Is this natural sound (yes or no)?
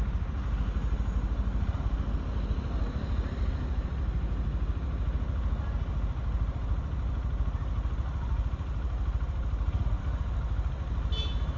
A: yes